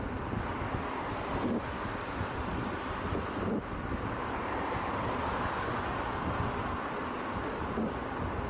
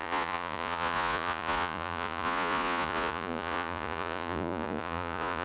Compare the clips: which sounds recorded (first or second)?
first